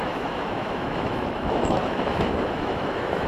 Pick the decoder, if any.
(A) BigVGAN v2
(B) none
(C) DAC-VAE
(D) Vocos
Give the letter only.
C